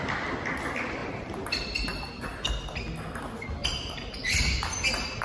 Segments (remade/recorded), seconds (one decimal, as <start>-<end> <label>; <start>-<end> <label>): 0.0-1.0 recorded; 1.0-2.5 remade; 2.5-3.6 recorded; 3.6-4.4 remade; 4.4-5.2 recorded